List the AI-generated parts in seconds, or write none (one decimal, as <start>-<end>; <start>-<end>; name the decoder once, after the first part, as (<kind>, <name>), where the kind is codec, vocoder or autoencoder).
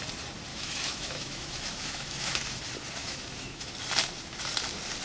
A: 0.5-2.6 (autoencoder, DAC-VAE); 3.0-3.7